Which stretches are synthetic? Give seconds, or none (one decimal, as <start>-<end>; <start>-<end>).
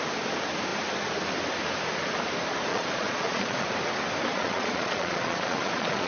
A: 2.7-3.7; 4.3-6.1